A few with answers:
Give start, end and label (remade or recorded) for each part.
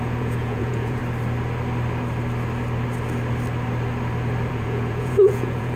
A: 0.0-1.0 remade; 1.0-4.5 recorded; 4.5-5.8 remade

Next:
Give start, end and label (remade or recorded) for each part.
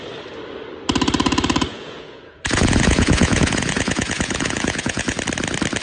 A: 0.0-1.7 recorded; 1.7-5.2 remade; 5.2-5.8 recorded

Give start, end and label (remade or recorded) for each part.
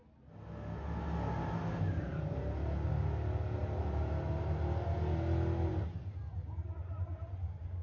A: 0.0-7.8 recorded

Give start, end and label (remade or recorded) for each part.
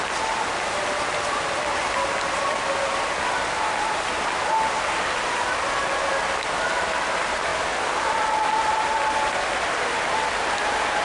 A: 0.0-11.0 recorded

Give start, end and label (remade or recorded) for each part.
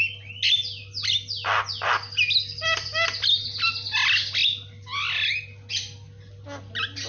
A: 0.0-7.1 recorded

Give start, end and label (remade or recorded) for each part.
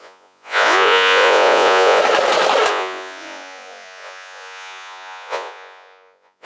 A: 0.0-2.0 remade; 2.0-2.7 recorded; 2.7-6.5 remade